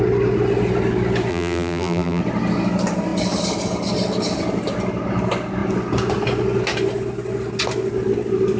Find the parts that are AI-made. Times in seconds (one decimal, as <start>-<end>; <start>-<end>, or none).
1.3-2.2